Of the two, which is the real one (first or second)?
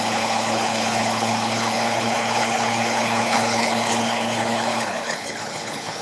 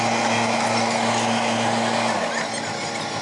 second